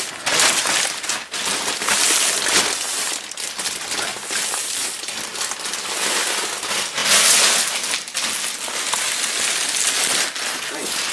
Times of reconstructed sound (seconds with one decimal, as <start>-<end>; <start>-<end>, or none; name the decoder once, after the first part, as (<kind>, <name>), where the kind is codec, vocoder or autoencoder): none